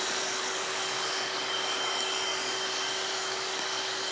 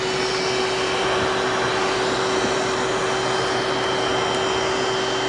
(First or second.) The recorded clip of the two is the second